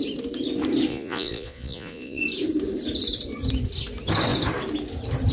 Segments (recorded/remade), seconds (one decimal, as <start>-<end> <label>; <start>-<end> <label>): 0.0-0.9 recorded; 0.9-2.2 remade; 2.2-5.3 recorded